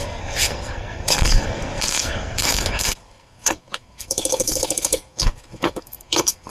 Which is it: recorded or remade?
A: remade